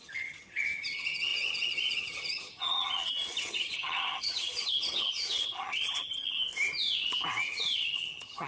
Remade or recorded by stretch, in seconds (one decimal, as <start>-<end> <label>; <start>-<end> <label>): 0.0-6.4 remade; 6.4-7.4 recorded; 7.4-8.5 remade